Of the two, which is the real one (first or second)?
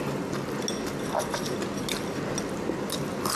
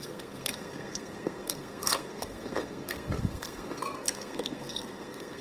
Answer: first